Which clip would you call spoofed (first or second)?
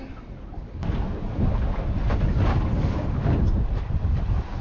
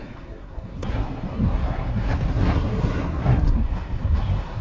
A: second